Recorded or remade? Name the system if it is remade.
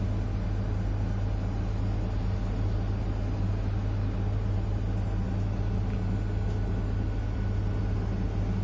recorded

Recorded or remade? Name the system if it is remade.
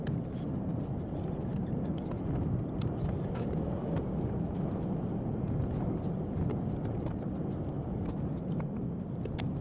recorded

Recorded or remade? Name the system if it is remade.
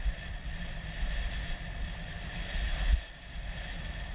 remade, vocoder, BigVGAN v2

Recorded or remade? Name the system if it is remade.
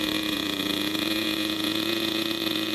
remade, vocoder, Vocos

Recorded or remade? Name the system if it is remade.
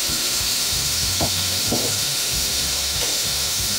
remade, autoencoder, DAC-VAE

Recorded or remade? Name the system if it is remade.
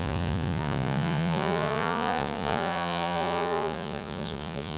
remade, vocoder, Vocos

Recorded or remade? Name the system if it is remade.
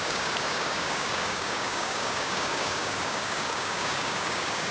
remade, codec, DAC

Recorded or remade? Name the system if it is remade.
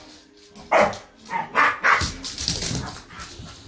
recorded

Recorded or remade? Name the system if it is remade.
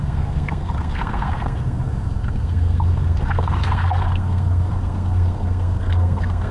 remade, codec, SNAC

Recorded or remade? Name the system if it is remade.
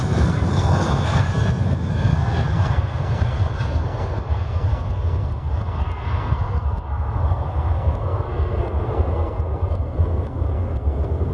remade, codec, SNAC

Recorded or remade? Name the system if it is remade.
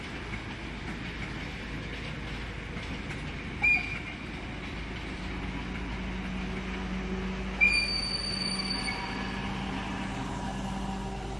recorded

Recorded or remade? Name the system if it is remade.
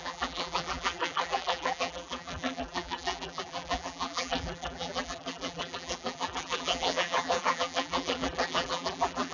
remade, vocoder, BigVGAN v2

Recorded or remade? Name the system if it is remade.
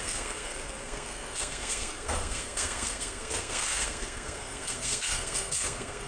remade, codec, SNAC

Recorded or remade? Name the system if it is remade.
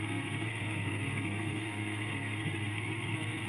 remade, codec, SNAC